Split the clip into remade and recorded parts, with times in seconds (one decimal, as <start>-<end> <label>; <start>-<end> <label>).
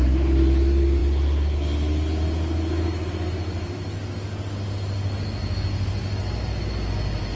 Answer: 0.0-7.4 recorded